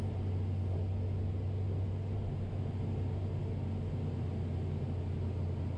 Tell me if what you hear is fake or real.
real